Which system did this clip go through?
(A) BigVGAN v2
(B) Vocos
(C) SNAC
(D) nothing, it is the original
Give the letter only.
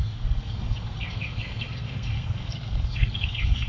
C